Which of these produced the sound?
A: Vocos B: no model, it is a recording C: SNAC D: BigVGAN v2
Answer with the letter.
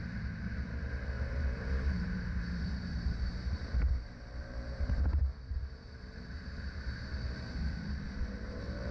D